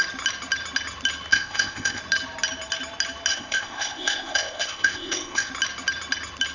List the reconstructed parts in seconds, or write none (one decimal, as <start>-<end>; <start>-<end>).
1.3-2.0; 3.3-5.5